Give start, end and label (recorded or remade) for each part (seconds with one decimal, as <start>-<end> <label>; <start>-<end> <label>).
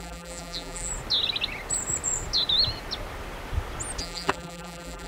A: 0.0-0.9 remade; 0.9-4.0 recorded; 4.0-5.1 remade